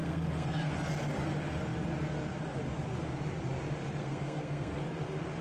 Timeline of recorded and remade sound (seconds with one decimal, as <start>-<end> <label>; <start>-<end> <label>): 0.0-0.7 remade; 0.7-4.0 recorded; 4.0-4.8 remade; 4.8-5.4 recorded